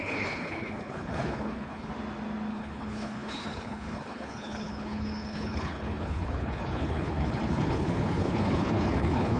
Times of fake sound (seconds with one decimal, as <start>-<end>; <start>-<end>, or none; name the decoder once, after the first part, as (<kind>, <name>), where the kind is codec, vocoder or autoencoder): 0.0-1.9 (codec, HILCodec); 2.5-9.4